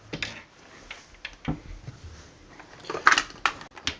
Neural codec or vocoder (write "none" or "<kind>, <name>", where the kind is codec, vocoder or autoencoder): none